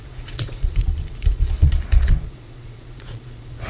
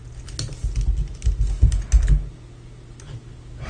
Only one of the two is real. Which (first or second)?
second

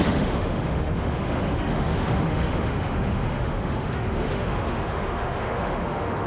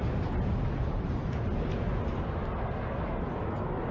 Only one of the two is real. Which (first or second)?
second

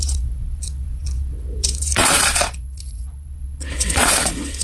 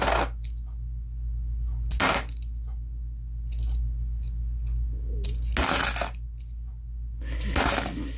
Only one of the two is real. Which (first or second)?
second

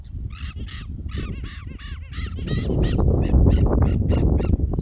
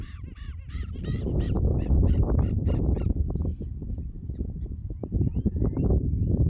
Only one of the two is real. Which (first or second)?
first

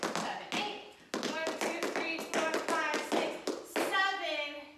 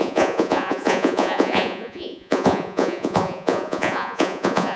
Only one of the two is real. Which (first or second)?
first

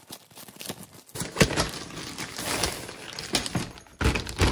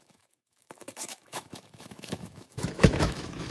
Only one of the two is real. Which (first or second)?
first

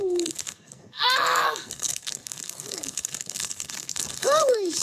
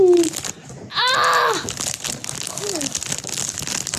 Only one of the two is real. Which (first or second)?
second